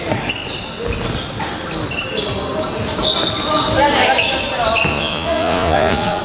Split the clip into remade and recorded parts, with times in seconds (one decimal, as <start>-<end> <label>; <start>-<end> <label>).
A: 0.0-4.9 recorded; 4.9-6.2 remade